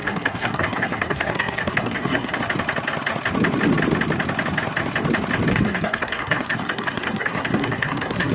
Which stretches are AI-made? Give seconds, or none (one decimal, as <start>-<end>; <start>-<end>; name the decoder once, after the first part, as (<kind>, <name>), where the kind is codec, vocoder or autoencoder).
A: 0.0-2.4 (codec, SNAC); 5.5-8.3